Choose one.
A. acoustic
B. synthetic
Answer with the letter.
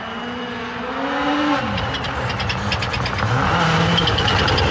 A